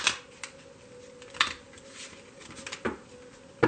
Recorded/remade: recorded